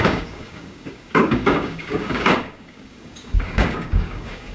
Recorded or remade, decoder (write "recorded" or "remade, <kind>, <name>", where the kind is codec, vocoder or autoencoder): remade, codec, DAC